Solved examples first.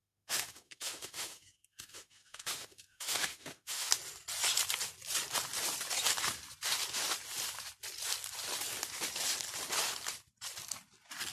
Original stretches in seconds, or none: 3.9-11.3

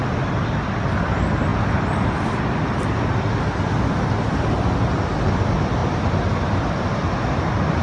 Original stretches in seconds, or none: 0.0-7.8

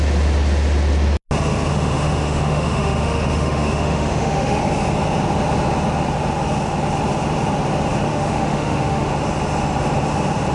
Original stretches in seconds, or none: 0.0-1.7; 4.6-8.1; 9.1-10.5

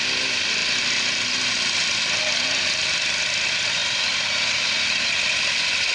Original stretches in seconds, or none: 0.0-5.9

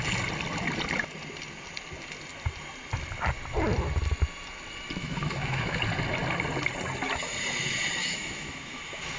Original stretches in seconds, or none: 0.0-5.0; 5.8-8.0

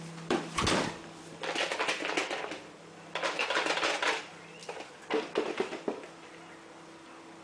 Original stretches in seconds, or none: 0.0-7.4

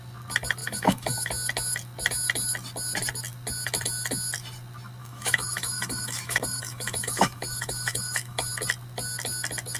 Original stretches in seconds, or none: 0.0-0.6; 1.3-5.0; 8.5-9.8

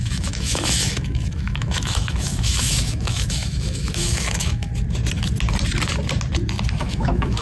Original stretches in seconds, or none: 4.7-6.8